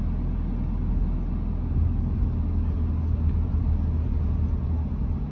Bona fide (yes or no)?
yes